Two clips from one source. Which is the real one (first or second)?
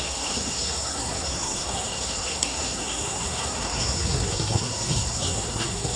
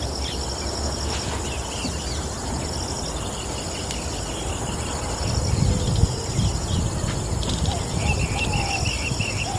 second